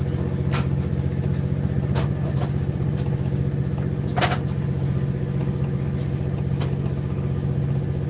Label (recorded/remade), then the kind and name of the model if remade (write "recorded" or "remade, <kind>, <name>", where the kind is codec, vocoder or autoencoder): recorded